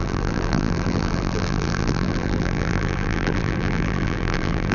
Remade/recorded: remade